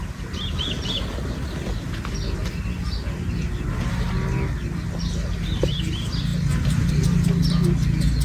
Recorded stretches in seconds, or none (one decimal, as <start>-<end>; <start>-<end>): 0.0-8.2